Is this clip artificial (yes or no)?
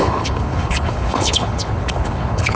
yes